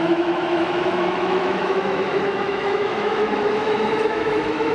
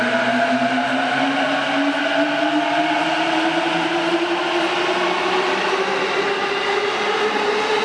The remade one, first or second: first